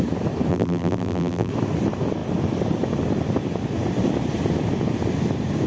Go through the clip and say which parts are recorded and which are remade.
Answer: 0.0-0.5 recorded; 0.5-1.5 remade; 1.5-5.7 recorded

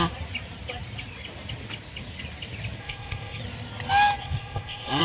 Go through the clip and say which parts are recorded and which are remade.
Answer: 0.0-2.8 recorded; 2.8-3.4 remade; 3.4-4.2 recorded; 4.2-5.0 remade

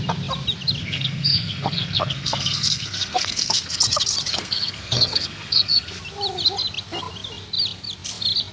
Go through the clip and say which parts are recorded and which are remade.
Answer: 0.0-0.8 recorded; 0.8-3.8 remade; 3.8-4.3 recorded; 4.3-6.0 remade; 6.0-8.5 recorded

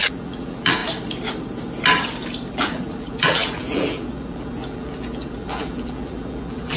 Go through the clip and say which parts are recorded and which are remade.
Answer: 0.0-0.8 remade; 0.8-2.5 recorded; 2.5-6.8 remade